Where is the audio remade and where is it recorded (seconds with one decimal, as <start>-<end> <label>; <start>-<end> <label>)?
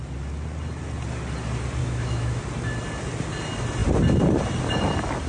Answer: 0.0-1.8 recorded; 1.8-2.4 remade; 2.4-5.3 recorded